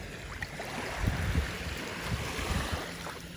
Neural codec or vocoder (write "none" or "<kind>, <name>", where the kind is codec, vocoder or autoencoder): none